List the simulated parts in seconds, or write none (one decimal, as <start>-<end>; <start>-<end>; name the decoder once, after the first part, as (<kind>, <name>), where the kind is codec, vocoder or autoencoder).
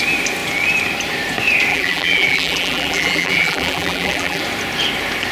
1.7-4.4 (vocoder, BigVGAN v2)